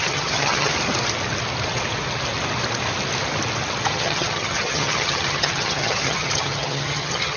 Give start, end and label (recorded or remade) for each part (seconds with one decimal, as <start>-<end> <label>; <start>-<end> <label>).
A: 0.0-0.7 remade; 0.7-3.9 recorded; 3.9-7.4 remade